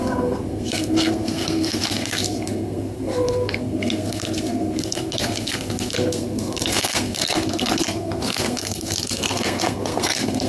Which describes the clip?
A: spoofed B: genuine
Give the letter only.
A